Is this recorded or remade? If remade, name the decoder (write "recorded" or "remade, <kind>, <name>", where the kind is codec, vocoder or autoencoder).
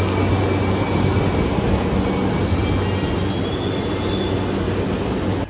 recorded